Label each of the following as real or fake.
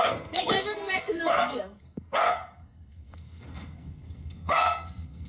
fake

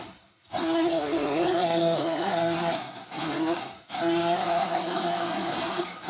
fake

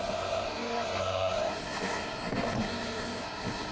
fake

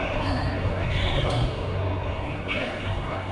fake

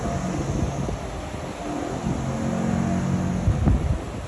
real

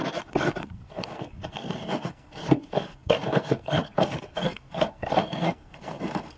fake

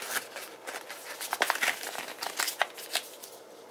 real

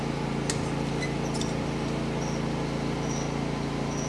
real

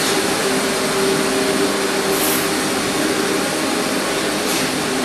real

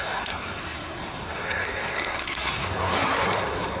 fake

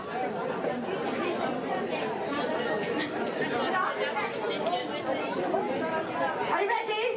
real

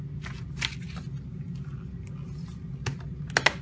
real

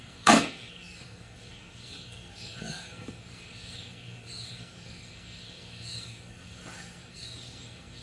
fake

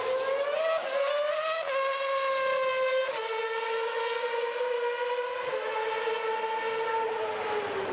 real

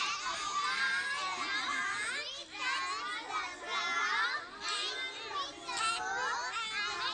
real